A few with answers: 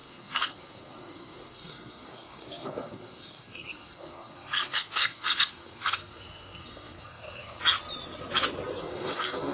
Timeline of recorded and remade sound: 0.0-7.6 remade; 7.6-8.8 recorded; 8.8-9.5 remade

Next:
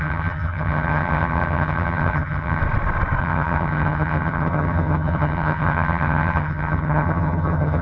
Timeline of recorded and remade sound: 0.0-2.6 remade; 2.6-3.2 recorded; 3.2-7.8 remade

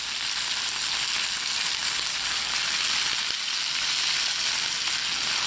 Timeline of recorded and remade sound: 0.0-5.5 recorded

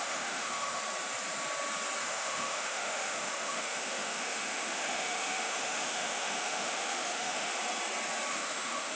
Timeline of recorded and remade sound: 0.0-0.8 remade; 0.8-2.0 recorded; 2.0-7.5 remade; 7.5-8.3 recorded; 8.3-9.0 remade

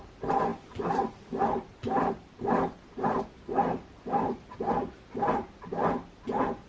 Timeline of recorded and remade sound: 0.0-6.7 recorded

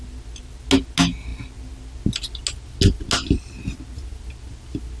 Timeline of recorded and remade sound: 0.0-5.0 recorded

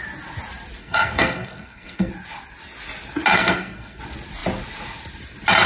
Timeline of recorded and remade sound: 0.0-0.8 recorded; 0.8-2.1 remade; 2.1-3.3 recorded; 3.3-4.0 remade; 4.0-5.7 recorded

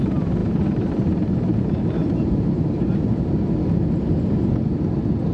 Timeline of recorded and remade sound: 0.0-0.4 recorded; 0.4-3.2 remade; 3.2-5.3 recorded